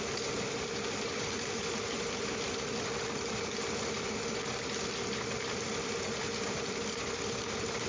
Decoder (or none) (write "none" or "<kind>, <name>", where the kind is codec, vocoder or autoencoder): none